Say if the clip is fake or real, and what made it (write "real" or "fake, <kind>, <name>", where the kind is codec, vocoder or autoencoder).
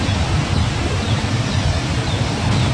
real